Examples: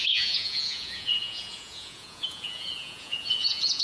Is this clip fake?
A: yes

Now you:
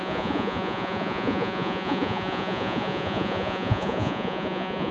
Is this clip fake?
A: yes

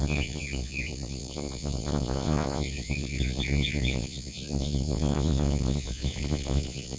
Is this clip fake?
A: yes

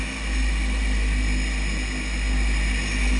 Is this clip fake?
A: no